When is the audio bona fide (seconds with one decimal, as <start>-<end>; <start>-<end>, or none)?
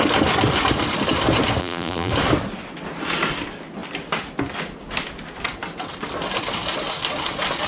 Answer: 0.0-1.6; 2.1-7.7